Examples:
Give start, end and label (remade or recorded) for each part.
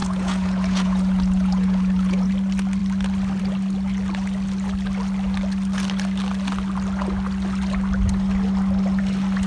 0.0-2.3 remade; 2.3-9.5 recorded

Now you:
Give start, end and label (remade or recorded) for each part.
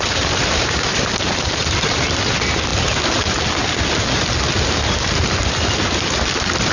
0.0-6.7 recorded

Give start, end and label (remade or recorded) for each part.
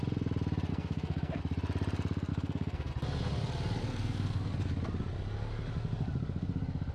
0.0-0.7 recorded; 0.7-1.4 remade; 1.4-2.3 recorded; 2.3-2.9 remade; 2.9-3.8 recorded; 3.8-4.5 remade; 4.5-6.9 recorded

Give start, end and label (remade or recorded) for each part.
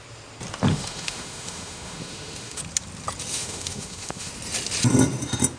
0.0-0.7 recorded; 0.7-2.6 remade; 2.6-3.3 recorded; 3.3-4.3 remade; 4.3-5.6 recorded